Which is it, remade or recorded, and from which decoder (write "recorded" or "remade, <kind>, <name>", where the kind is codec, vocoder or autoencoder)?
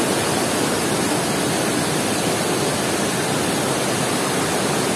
recorded